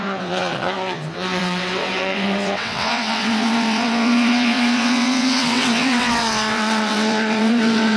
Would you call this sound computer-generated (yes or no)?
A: yes